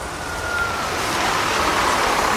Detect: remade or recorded recorded